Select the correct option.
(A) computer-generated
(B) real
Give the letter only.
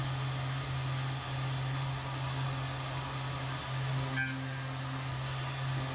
B